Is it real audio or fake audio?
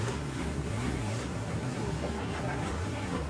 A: fake